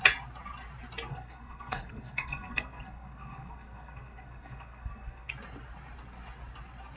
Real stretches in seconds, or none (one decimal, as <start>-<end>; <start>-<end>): 0.0-1.1; 5.3-7.0